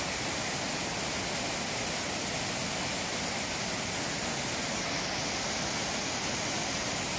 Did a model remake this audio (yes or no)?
no